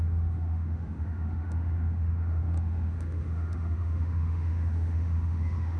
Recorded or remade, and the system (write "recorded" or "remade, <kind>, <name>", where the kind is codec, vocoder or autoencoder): remade, autoencoder, DAC-VAE